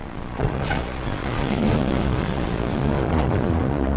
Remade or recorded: remade